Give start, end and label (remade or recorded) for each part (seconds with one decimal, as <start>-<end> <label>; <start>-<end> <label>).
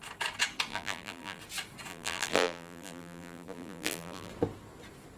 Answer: 0.0-0.7 recorded; 0.7-1.4 remade; 1.4-1.9 recorded; 1.9-4.3 remade; 4.3-5.2 recorded